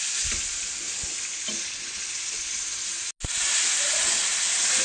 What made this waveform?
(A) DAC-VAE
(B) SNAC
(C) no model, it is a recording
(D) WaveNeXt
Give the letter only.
C